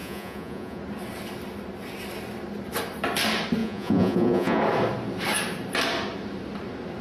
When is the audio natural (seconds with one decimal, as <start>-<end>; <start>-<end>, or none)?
0.8-3.6; 4.6-7.0